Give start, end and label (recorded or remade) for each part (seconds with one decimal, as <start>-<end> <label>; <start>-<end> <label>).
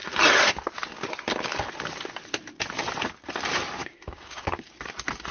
0.0-3.8 recorded; 3.8-4.7 remade; 4.7-5.3 recorded